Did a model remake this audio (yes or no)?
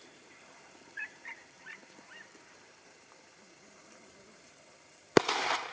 yes